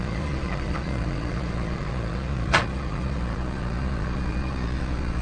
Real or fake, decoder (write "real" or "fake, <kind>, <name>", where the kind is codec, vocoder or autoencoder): fake, vocoder, Vocos